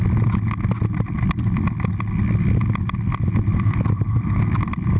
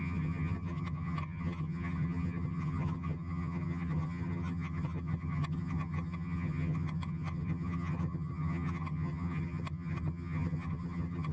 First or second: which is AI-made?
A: second